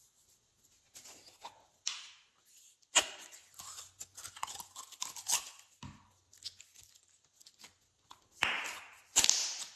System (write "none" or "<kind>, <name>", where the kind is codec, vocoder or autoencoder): none